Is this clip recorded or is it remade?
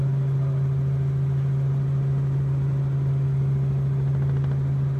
recorded